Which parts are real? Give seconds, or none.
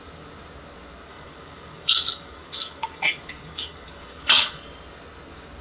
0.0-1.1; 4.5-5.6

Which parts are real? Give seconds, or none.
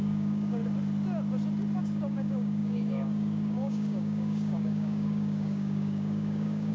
0.6-1.8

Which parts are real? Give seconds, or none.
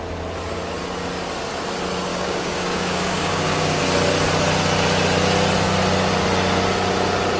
0.0-2.1; 3.8-7.4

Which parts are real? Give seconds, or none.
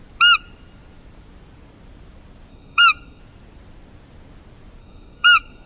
0.0-2.5; 3.2-4.8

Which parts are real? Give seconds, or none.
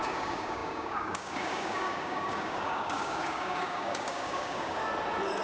4.8-5.4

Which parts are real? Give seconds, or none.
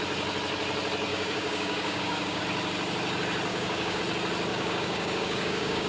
0.0-1.1; 2.4-3.5; 4.0-4.5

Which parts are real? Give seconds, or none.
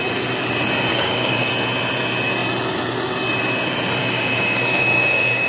0.0-0.9; 1.5-4.0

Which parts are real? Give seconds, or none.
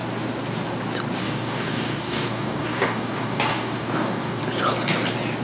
0.0-1.2; 4.4-5.4